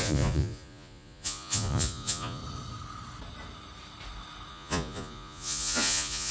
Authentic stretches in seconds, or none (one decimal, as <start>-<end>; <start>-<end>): 2.4-4.5